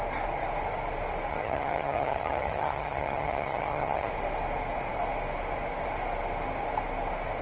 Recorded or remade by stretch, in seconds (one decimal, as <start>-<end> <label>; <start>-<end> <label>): 0.0-1.3 recorded; 1.3-4.1 remade; 4.1-7.4 recorded